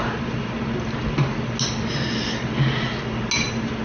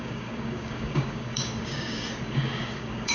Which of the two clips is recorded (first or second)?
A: first